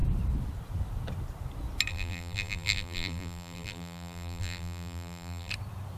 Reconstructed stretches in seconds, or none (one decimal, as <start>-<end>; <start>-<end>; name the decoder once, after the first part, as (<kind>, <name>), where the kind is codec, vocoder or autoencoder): 1.9-5.5 (vocoder, BigVGAN v2)